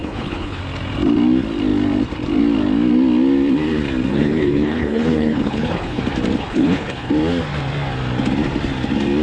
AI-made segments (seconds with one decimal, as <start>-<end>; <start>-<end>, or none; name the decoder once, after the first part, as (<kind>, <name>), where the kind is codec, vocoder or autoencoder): 0.0-0.6 (codec, HILCodec); 4.1-6.0; 6.4-7.1